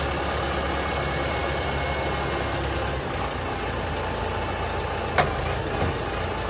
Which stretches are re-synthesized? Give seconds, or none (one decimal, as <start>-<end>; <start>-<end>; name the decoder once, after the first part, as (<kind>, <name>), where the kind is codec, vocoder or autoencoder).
none